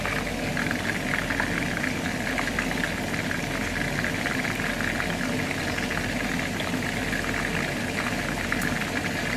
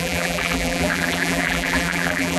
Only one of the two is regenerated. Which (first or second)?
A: second